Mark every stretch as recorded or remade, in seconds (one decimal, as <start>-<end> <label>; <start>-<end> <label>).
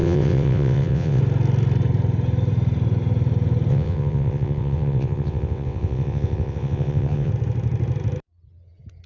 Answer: 0.0-1.2 remade; 1.2-3.7 recorded; 3.7-7.3 remade; 7.3-9.1 recorded